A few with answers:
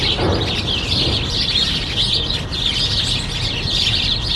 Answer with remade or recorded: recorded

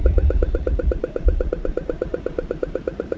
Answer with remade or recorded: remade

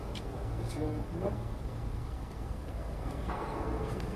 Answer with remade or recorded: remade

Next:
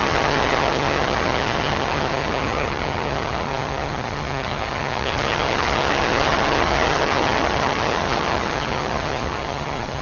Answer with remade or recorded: remade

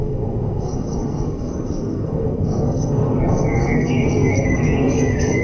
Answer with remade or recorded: remade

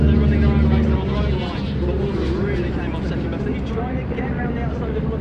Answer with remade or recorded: recorded